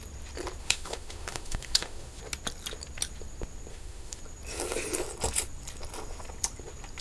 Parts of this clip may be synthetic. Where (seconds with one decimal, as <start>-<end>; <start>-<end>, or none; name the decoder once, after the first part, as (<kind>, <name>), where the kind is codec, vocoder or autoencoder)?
0.6-2.2 (autoencoder, DAC-VAE); 3.7-4.2